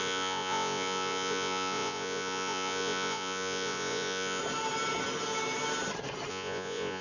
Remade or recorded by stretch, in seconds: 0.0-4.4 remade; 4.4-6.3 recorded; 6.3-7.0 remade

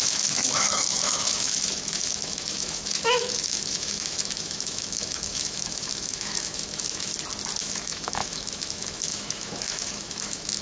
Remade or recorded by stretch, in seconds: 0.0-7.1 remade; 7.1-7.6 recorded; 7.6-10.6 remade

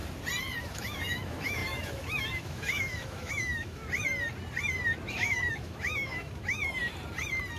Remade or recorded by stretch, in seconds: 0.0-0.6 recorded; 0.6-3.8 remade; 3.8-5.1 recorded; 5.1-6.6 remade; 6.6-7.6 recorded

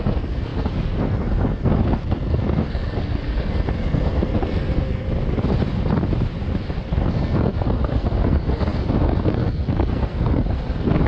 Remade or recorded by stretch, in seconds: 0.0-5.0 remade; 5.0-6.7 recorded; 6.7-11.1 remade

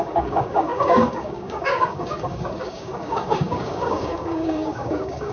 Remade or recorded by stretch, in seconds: 0.0-5.3 remade

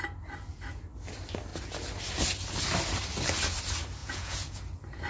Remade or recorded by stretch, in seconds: 0.0-4.0 recorded; 4.0-4.6 remade; 4.6-5.1 recorded